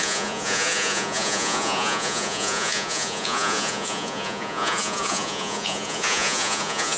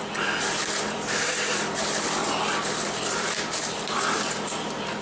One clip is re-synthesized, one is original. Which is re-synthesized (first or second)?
first